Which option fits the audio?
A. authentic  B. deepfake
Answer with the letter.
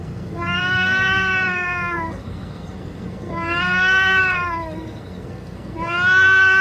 B